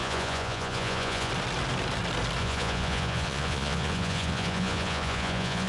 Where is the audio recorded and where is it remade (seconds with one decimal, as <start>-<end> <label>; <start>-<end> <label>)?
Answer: 0.0-1.3 remade; 1.3-2.4 recorded; 2.4-5.7 remade